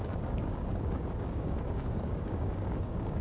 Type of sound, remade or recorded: remade